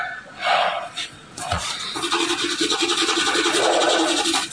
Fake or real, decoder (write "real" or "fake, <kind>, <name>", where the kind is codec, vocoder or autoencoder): fake, vocoder, Vocos